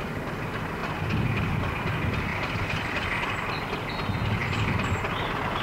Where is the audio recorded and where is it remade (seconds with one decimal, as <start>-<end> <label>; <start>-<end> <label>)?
0.0-2.3 recorded; 2.3-3.5 remade; 3.5-4.4 recorded; 4.4-5.0 remade; 5.0-5.6 recorded